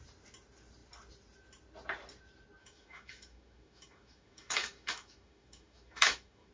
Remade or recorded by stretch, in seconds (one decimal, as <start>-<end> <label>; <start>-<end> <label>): 0.0-2.6 recorded; 2.6-6.5 remade